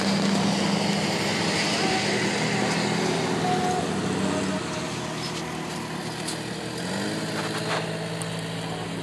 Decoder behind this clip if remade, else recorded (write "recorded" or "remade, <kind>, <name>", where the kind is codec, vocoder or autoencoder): recorded